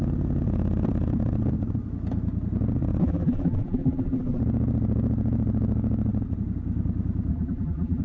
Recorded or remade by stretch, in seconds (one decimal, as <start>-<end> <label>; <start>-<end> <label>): 0.0-3.0 recorded; 3.0-4.4 remade; 4.4-7.3 recorded; 7.3-8.0 remade